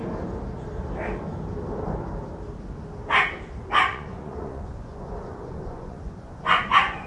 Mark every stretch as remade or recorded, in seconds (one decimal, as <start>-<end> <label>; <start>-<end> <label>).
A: 0.0-3.9 recorded; 3.9-7.1 remade

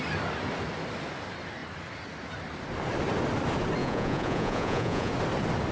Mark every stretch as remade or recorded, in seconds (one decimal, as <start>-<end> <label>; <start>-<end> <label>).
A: 0.0-3.8 recorded; 3.8-5.1 remade; 5.1-5.7 recorded

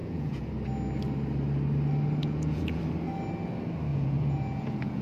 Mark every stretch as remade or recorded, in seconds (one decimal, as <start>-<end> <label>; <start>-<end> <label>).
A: 0.0-0.5 remade; 0.5-2.2 recorded; 2.2-2.8 remade; 2.8-3.9 recorded; 3.9-5.0 remade

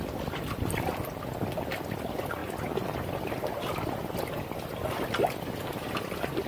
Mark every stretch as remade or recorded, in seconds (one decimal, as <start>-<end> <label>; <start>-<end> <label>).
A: 0.0-6.5 recorded

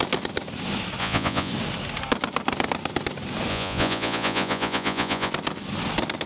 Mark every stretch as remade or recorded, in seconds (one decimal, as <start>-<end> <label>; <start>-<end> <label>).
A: 0.0-1.0 recorded; 1.0-1.5 remade; 1.5-3.5 recorded; 3.5-5.3 remade; 5.3-6.3 recorded

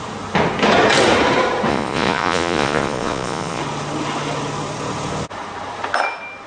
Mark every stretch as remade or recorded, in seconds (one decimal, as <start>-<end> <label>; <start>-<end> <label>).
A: 0.0-1.7 recorded; 1.7-3.6 remade; 3.6-6.5 recorded